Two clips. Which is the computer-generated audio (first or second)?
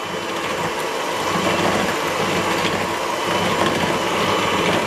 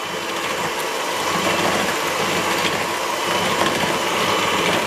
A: second